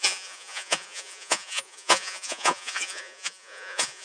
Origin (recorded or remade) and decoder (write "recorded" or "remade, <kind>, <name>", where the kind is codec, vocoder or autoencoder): remade, vocoder, Vocos